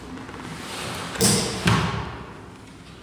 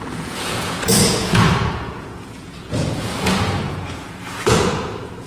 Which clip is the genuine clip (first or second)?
first